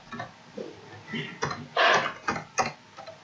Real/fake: real